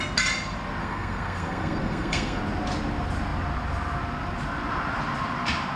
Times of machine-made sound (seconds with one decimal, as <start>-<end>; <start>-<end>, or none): 0.8-2.4